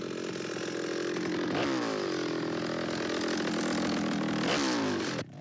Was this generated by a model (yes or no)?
no